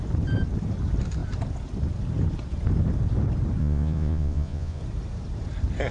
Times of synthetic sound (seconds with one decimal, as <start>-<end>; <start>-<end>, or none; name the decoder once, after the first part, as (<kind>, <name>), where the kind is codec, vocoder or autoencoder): 3.6-4.8 (vocoder, Vocos)